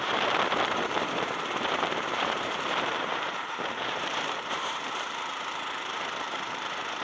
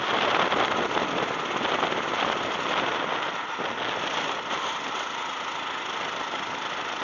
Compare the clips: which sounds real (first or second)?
second